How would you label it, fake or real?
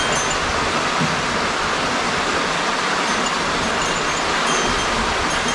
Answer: real